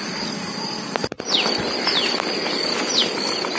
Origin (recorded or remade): recorded